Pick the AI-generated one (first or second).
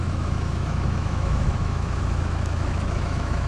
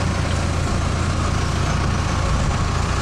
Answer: first